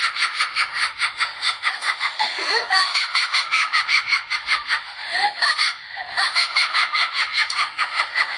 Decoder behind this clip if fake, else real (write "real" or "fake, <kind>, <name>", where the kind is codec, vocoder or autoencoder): fake, autoencoder, DAC-VAE